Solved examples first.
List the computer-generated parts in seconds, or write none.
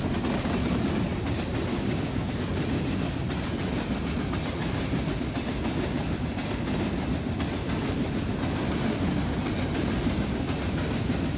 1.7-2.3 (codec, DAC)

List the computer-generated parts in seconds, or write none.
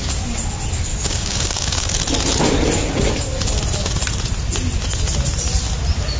0.9-2.0 (codec, DAC)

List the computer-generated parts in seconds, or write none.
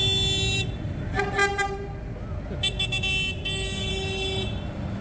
none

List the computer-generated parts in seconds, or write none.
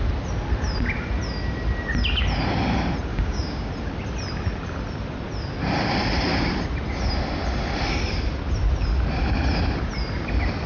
3.1-3.7 (codec, DAC)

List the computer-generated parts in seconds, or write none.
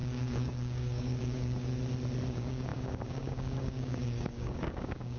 0.0-1.7 (codec, DAC); 2.3-5.2